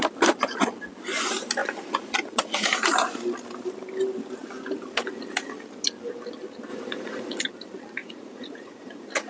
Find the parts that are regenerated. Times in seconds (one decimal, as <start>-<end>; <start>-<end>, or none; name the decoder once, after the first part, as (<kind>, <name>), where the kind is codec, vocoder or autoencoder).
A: 1.6-2.7 (vocoder, Vocos); 6.7-7.4; 8.0-9.3